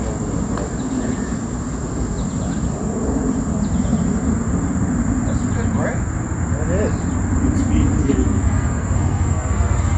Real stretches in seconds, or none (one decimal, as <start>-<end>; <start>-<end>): 0.0-8.0